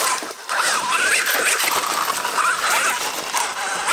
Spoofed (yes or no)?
yes